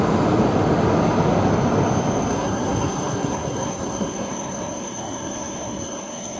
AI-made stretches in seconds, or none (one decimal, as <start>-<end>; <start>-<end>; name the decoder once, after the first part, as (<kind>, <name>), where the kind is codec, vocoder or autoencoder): 2.3-6.4 (codec, SNAC)